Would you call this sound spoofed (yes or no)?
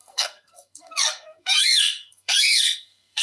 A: yes